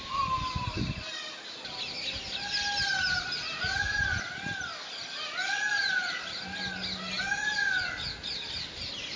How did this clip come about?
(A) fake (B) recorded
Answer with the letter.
B